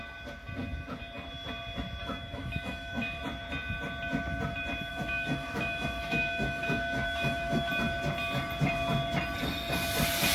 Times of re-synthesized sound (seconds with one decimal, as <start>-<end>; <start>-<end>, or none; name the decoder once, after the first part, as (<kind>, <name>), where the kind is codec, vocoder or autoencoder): 2.0-3.2 (autoencoder, DAC-VAE); 4.9-7.7

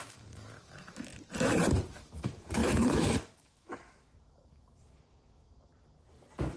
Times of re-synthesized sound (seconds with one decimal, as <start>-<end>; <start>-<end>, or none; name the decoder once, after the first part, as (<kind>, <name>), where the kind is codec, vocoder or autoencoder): 0.0-1.1 (autoencoder, DAC-VAE); 2.0-5.7

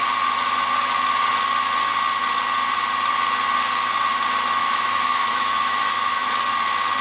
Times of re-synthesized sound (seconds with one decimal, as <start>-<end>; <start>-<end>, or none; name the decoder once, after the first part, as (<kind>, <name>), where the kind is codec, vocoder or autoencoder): 4.6-6.3 (autoencoder, DAC-VAE)

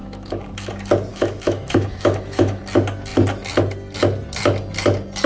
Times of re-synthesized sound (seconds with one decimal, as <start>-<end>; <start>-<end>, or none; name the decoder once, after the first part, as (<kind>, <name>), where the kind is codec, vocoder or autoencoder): 0.0-0.7 (autoencoder, DAC-VAE); 1.1-2.6

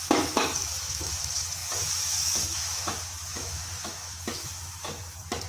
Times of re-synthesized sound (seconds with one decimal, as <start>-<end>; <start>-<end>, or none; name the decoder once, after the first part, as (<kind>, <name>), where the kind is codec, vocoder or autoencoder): 0.0-5.5 (autoencoder, DAC-VAE)

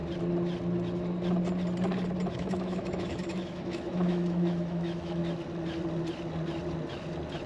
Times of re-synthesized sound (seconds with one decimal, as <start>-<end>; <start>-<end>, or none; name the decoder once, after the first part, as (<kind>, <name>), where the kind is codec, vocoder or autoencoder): 2.3-5.2 (autoencoder, DAC-VAE)